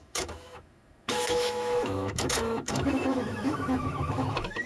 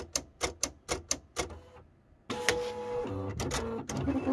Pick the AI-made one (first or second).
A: first